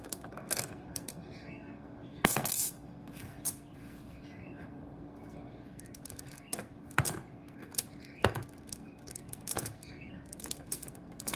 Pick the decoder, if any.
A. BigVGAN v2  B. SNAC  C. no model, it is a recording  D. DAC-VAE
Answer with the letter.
B